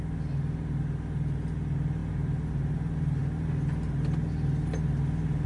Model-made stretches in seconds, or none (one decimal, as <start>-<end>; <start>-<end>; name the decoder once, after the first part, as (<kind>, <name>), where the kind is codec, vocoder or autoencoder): 2.0-2.7 (vocoder, BigVGAN v2)